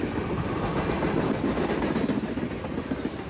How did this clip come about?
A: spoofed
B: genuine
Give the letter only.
B